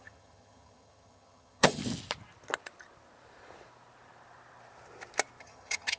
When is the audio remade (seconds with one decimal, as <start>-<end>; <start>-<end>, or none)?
0.0-1.8; 5.4-6.0